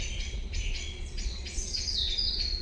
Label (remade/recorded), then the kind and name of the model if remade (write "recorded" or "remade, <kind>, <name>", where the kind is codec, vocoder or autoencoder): remade, vocoder, Vocos